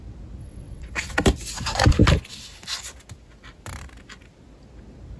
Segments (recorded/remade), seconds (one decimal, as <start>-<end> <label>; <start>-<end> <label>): 0.0-0.4 recorded; 0.4-1.1 remade; 1.1-5.2 recorded